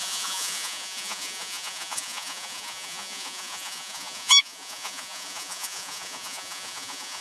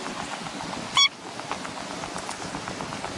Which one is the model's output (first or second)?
first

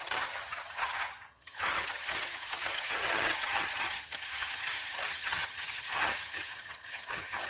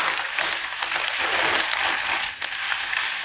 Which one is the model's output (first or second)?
first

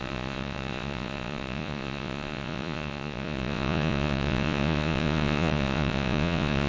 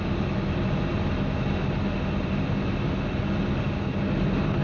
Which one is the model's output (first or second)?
first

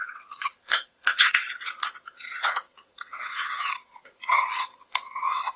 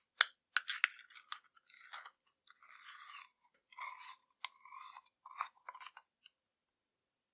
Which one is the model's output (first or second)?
first